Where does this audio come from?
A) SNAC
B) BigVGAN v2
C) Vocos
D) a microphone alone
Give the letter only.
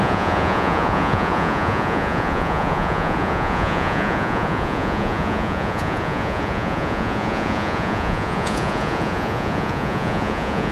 C